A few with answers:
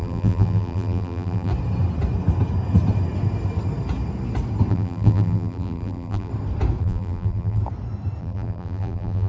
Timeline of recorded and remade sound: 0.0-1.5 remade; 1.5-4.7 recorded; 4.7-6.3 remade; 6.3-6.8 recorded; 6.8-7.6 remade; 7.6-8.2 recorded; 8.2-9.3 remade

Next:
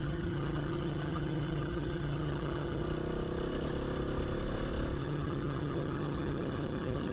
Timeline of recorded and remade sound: 0.0-2.8 remade; 2.8-5.0 recorded; 5.0-7.1 remade

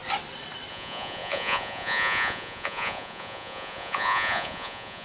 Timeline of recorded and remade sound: 0.0-0.7 recorded; 0.7-5.0 remade

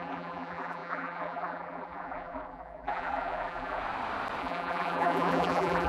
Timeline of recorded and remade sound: 0.0-3.8 remade; 3.8-4.4 recorded; 4.4-5.9 remade

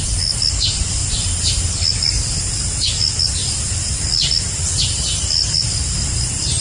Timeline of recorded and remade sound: 0.0-6.6 recorded